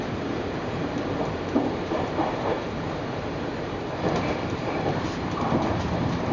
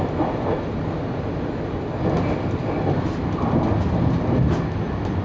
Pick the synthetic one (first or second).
first